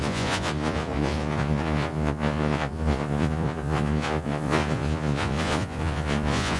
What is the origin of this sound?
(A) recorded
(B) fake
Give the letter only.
B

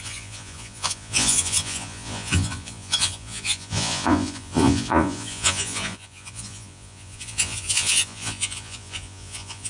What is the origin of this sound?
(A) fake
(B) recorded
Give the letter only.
A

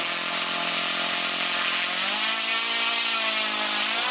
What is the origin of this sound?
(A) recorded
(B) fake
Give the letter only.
A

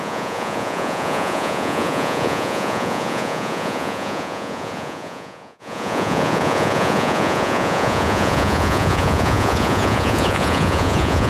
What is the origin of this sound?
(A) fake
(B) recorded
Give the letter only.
A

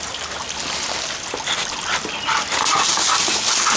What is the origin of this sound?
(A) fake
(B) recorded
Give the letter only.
B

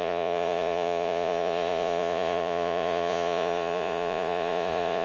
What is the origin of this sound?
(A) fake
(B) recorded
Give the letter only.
A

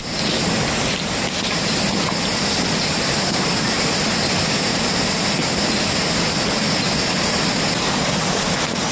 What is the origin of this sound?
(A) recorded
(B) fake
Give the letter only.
A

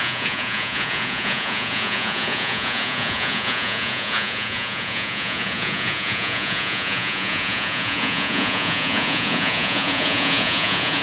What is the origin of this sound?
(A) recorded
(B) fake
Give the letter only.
B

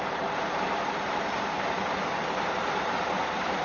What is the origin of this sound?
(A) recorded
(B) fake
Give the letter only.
A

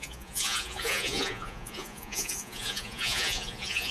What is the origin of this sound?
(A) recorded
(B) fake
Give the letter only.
B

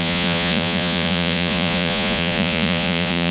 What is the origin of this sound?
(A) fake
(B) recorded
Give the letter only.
A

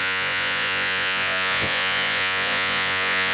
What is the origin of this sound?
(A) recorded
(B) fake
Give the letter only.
B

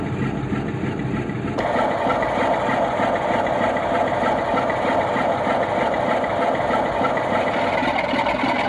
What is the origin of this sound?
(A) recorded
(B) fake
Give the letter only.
A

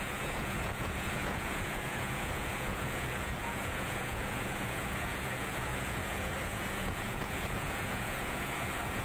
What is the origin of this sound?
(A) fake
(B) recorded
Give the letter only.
A